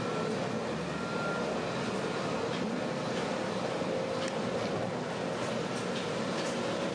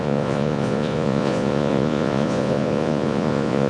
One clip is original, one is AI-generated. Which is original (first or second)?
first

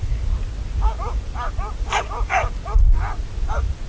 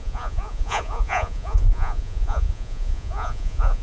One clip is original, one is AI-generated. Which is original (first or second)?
first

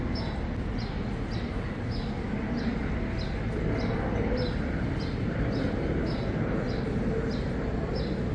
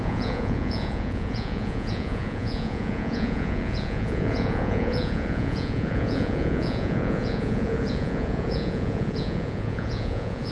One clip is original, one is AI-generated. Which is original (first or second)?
first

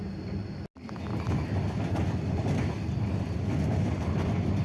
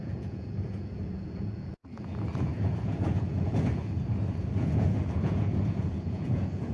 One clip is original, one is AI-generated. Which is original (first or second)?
first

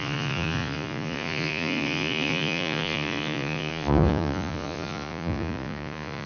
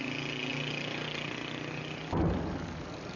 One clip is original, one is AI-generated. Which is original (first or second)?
second